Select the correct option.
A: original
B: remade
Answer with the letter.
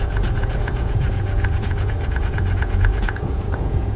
B